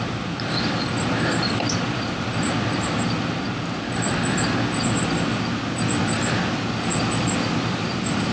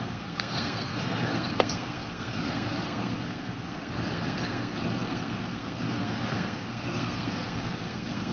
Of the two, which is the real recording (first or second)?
first